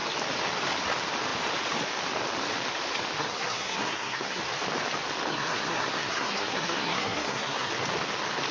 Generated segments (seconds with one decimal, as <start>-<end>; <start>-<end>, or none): 3.2-4.4; 5.3-7.7

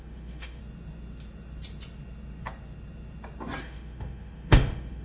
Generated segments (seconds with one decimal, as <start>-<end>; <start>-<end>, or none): 0.0-0.6; 3.6-5.0

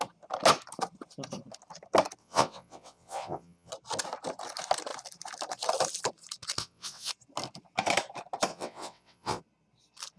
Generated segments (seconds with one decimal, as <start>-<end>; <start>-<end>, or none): 2.2-3.7; 6.6-7.1; 8.5-9.4